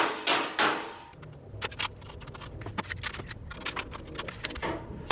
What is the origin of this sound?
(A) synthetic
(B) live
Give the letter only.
B